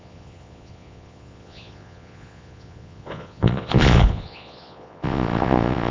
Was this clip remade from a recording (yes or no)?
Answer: yes